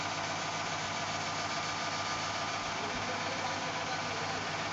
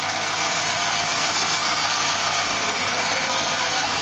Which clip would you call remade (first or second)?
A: second